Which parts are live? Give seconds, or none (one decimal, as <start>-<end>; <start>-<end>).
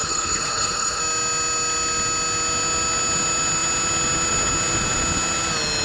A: 1.0-5.8